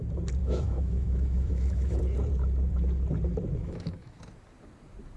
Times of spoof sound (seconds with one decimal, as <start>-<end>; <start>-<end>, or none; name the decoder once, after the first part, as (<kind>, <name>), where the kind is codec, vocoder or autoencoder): 0.4-2.0 (autoencoder, DAC-VAE); 3.6-4.2